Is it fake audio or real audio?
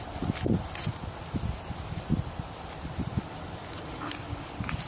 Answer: real